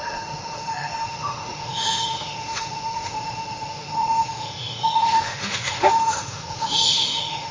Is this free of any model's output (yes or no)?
no